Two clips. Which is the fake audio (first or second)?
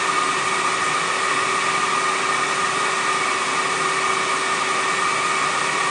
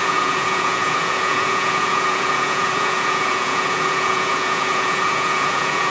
second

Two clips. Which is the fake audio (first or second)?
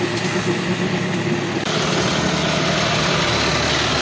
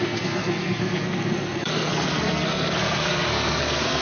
second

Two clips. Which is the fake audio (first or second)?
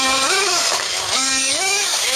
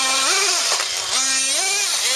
first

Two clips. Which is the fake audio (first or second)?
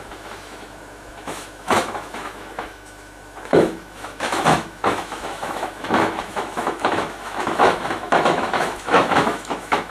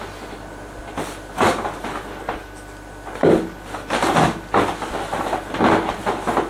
first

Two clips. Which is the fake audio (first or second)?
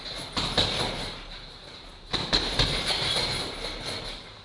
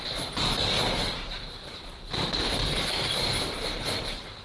second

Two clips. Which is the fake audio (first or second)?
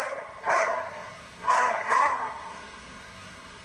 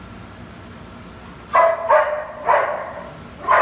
first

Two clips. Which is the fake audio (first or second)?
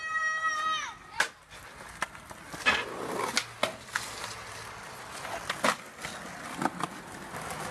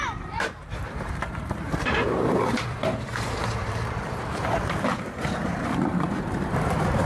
second